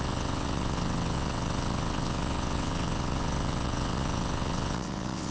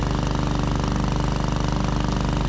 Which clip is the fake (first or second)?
first